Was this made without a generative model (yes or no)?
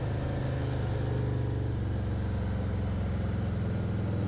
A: yes